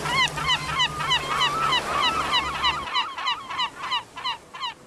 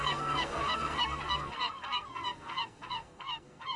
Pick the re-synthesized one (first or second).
second